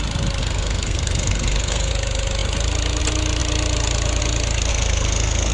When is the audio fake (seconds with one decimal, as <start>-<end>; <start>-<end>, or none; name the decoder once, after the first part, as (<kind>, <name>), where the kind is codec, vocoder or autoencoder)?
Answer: 0.4-1.9 (codec, SNAC); 4.7-5.5